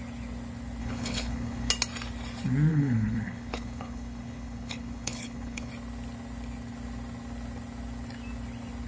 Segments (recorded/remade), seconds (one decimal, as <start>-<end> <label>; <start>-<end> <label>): 0.0-0.8 recorded; 0.8-1.7 remade; 1.7-2.7 recorded; 2.7-5.7 remade; 5.7-8.9 recorded